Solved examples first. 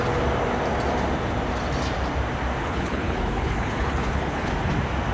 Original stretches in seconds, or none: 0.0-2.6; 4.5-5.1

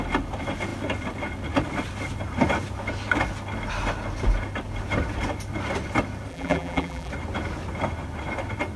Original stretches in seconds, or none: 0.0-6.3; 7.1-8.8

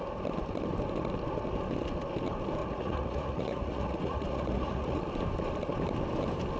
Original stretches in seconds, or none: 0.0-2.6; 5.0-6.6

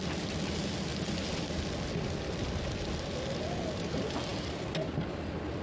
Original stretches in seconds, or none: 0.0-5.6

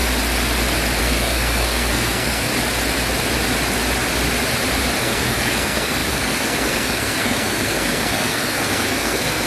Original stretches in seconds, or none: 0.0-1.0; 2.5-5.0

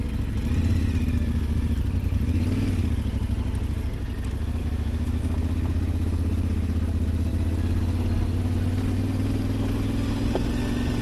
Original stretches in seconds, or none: 0.0-4.6; 5.2-11.0